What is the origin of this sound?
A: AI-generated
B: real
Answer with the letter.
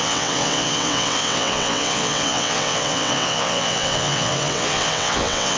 A